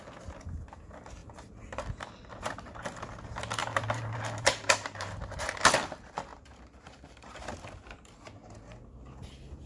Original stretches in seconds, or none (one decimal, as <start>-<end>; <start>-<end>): 0.0-3.6; 5.5-6.3; 7.7-9.7

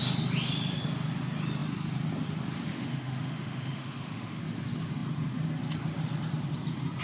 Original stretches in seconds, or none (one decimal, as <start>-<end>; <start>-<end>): 0.0-2.7; 4.4-7.0

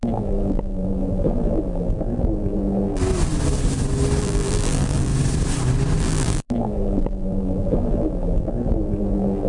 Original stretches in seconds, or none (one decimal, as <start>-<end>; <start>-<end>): 3.0-4.2; 5.1-6.0

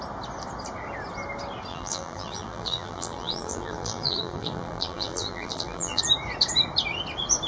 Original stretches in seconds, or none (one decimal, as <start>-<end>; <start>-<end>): 0.0-1.7; 6.0-7.5